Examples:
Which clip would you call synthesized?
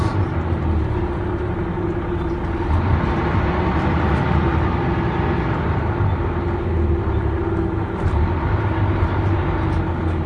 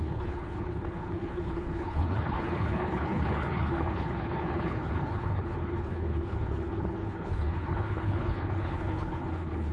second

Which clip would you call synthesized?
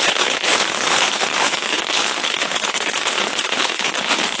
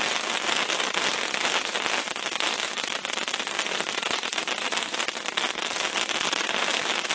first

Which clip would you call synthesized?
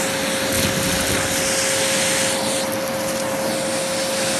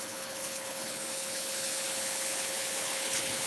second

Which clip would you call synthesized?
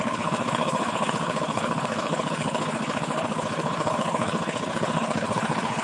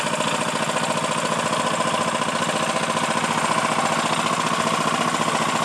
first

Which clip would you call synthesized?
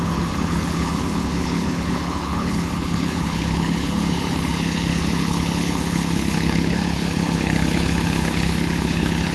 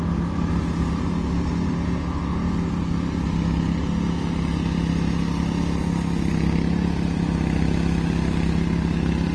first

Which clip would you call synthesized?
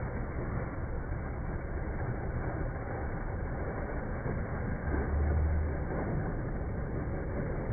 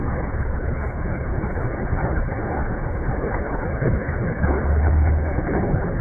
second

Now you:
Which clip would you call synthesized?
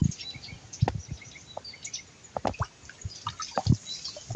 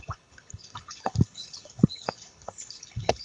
second